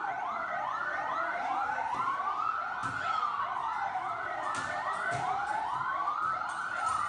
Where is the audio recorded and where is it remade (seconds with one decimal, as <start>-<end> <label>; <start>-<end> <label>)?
0.0-7.1 recorded